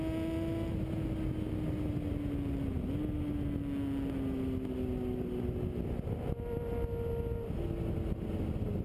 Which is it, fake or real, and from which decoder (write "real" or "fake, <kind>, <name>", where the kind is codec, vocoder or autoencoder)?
real